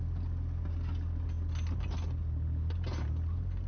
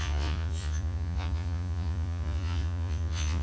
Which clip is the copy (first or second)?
second